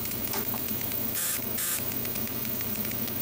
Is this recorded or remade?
remade